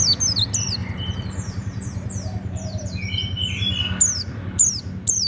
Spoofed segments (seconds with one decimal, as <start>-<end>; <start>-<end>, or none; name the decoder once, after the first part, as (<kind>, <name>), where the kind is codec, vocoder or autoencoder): 0.8-4.0 (vocoder, BigVGAN v2)